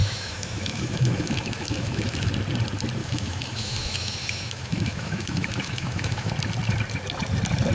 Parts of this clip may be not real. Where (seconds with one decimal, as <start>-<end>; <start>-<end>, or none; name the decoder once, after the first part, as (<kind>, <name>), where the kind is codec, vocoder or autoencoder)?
0.0-2.3 (autoencoder, DAC-VAE); 3.0-6.3